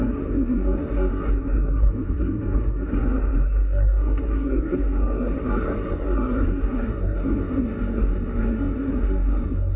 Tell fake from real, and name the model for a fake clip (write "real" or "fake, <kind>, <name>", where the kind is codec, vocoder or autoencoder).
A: fake, codec, SNAC